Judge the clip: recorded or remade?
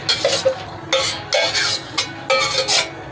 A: recorded